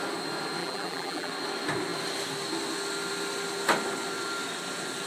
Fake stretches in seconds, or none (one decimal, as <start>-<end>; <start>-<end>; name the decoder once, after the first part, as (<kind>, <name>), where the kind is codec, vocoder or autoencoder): 0.6-1.3 (vocoder, BigVGAN v2)